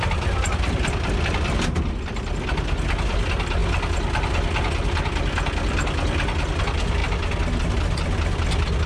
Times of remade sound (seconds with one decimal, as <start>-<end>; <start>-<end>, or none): none